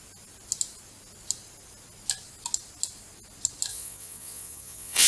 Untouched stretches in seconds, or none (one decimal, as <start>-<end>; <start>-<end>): 0.0-3.7